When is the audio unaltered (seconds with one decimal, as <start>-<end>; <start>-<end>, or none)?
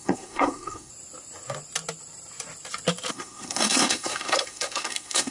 0.9-3.1